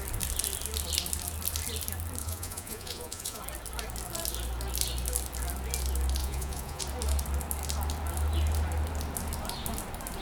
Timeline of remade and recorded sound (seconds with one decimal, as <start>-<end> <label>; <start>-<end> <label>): 0.0-2.2 recorded; 2.2-3.4 remade; 3.4-6.2 recorded; 6.2-6.8 remade; 6.8-10.2 recorded